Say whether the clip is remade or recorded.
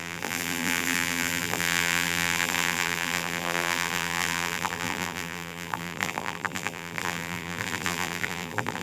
remade